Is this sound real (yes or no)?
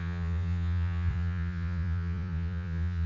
no